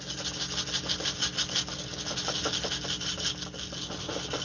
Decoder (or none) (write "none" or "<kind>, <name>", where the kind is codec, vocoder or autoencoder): none